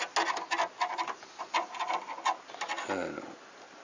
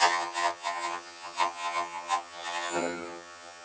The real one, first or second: first